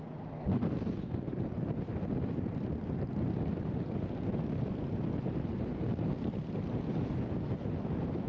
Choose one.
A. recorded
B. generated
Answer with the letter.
A